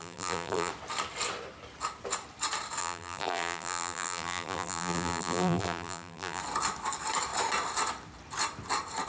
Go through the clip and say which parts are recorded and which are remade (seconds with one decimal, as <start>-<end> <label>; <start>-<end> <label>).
0.0-0.7 remade; 0.7-2.8 recorded; 2.8-6.4 remade; 6.4-9.1 recorded